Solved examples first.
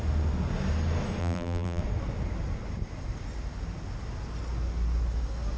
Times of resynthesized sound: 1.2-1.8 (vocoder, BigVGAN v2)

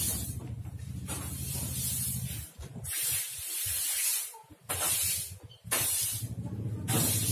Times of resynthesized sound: 0.0-7.3 (vocoder, BigVGAN v2)

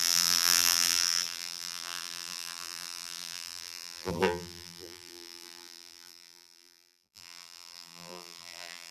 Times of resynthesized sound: 0.0-8.9 (vocoder, BigVGAN v2)

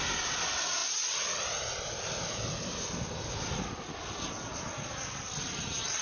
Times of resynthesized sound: none